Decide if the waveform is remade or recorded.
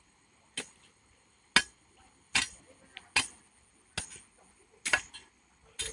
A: recorded